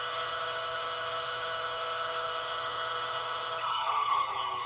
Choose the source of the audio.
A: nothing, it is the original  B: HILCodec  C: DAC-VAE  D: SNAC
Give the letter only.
B